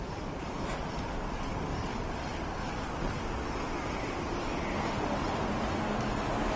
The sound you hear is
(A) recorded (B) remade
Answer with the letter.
A